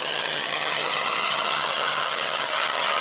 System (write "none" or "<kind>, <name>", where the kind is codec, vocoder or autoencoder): vocoder, HiFi-GAN